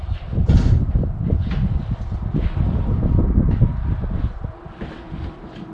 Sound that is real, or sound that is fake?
real